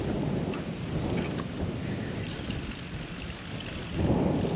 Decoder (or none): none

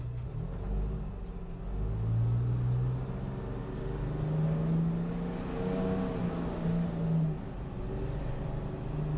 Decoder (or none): none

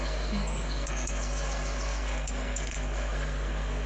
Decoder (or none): codec, SNAC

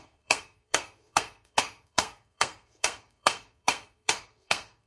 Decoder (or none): codec, SNAC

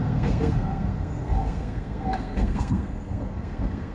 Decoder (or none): codec, SNAC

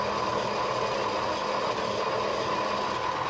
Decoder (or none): none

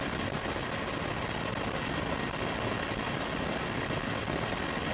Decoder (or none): none